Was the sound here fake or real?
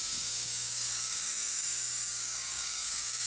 fake